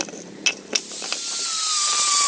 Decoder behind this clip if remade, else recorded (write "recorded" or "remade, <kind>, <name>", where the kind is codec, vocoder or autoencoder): recorded